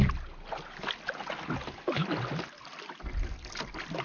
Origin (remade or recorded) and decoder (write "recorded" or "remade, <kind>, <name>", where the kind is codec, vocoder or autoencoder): recorded